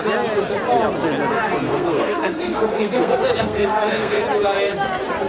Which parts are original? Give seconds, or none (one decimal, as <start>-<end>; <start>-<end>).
0.0-1.3; 4.2-5.3